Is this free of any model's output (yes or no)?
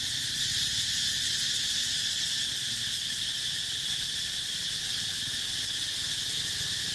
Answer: yes